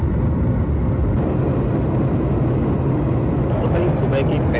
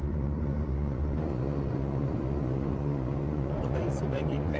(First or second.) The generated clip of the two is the second